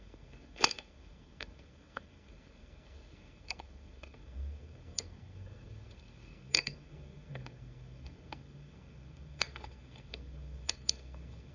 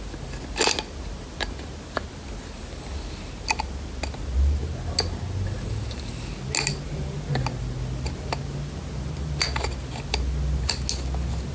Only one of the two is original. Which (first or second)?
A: second